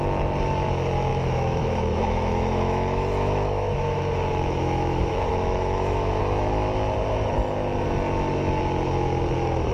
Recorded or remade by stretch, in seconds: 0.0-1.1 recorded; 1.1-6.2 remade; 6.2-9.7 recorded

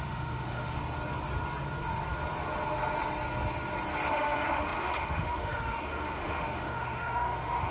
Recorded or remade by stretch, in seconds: 0.0-0.8 remade; 0.8-4.1 recorded; 4.1-7.7 remade

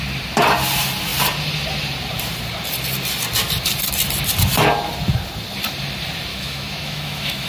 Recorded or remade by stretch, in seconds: 0.0-6.3 recorded; 6.3-7.5 remade

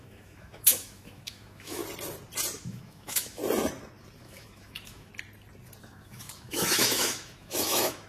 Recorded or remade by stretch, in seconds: 0.0-1.8 remade; 1.8-2.6 recorded; 2.6-3.4 remade; 3.4-4.2 recorded; 4.2-5.1 remade; 5.1-5.8 recorded; 5.8-8.1 remade